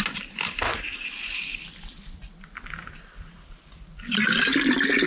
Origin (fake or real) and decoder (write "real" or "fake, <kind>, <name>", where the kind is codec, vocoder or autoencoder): real